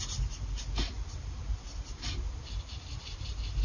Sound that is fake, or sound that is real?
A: real